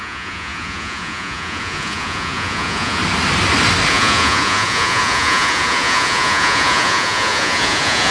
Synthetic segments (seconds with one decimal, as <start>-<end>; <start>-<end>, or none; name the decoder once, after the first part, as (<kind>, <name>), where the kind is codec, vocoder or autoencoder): 0.0-3.0 (vocoder, Vocos); 3.9-8.1